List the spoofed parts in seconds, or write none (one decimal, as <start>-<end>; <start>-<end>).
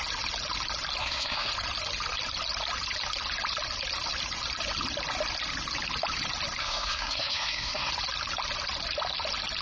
1.0-1.5; 6.6-7.9